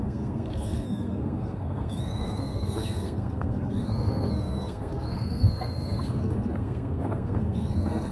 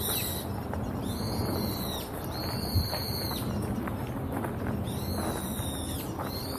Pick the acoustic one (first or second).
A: second